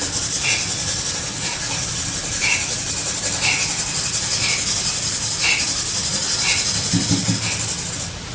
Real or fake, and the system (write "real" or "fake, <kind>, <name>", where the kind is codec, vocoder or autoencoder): real